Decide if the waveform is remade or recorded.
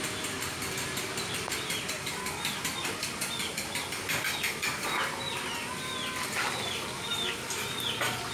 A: recorded